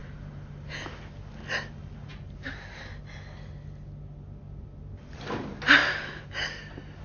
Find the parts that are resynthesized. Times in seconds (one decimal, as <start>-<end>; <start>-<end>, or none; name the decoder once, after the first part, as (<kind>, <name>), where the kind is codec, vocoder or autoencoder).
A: 0.0-0.7 (vocoder, BigVGAN v2); 2.1-2.8; 5.8-7.0